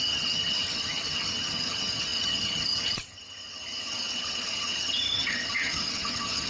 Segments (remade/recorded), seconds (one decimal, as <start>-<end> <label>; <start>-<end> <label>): 0.0-6.5 remade